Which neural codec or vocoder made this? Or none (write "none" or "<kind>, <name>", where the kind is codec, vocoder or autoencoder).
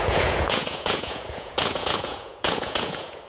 vocoder, Vocos